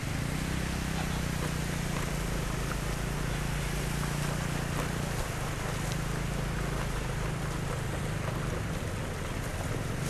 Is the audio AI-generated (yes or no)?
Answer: no